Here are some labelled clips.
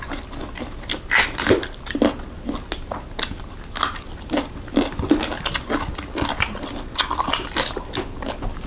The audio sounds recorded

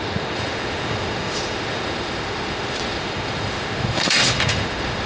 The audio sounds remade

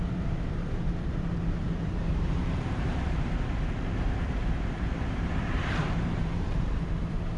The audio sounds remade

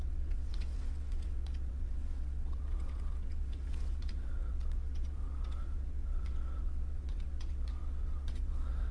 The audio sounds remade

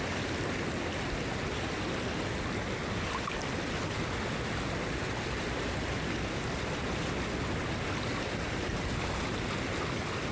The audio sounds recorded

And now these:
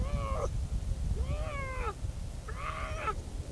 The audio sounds recorded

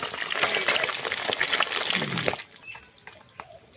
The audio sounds recorded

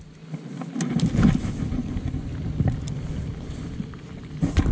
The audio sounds recorded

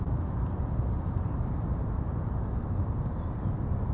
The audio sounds recorded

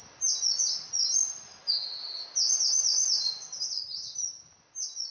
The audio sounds recorded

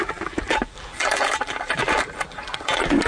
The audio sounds remade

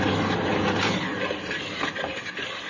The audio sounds recorded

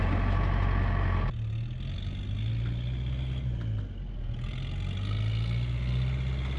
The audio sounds recorded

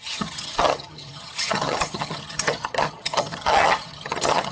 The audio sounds remade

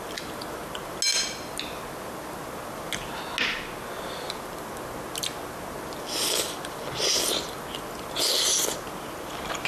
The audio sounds recorded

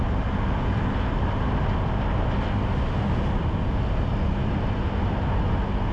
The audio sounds recorded